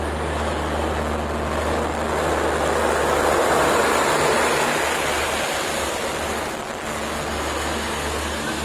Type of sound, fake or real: real